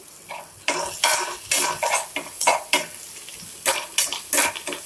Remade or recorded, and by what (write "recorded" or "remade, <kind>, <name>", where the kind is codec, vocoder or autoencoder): recorded